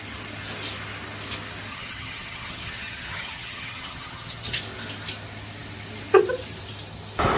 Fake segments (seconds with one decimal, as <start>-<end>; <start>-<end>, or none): 1.7-4.6